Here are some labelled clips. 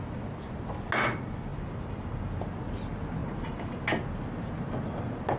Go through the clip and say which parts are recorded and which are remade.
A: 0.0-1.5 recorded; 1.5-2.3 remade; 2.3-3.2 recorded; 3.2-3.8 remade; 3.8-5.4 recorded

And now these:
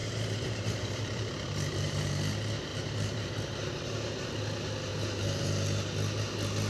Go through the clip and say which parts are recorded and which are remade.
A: 0.0-2.3 remade; 2.3-2.7 recorded; 2.7-3.3 remade; 3.3-4.9 recorded; 4.9-5.5 remade; 5.5-6.7 recorded

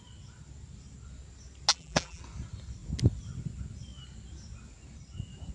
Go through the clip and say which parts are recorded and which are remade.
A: 0.0-1.7 recorded; 1.7-2.2 remade; 2.2-5.5 recorded

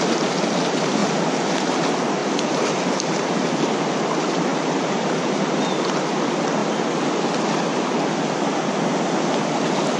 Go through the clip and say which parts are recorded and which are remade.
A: 0.0-1.0 recorded; 1.0-1.7 remade; 1.7-2.2 recorded; 2.2-3.3 remade; 3.3-4.5 recorded; 4.5-6.0 remade; 6.0-10.0 recorded

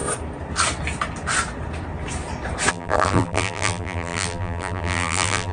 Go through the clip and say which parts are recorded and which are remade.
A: 0.0-2.7 recorded; 2.7-5.5 remade

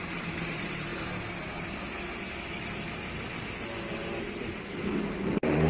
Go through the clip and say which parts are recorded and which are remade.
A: 0.0-0.9 remade; 0.9-4.2 recorded; 4.2-5.7 remade

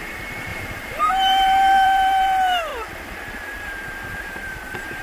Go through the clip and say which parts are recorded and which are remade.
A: 0.0-2.7 remade; 2.7-4.2 recorded; 4.2-5.0 remade

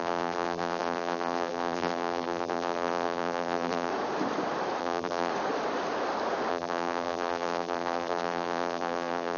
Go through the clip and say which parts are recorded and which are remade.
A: 0.0-3.9 remade; 3.9-4.8 recorded; 4.8-5.3 remade; 5.3-6.5 recorded; 6.5-9.4 remade